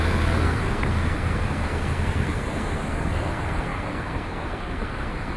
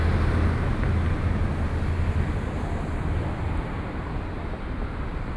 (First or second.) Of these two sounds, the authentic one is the second